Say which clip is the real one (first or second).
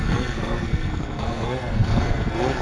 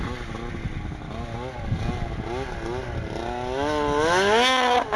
second